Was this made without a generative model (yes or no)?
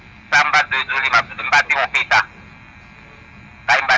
yes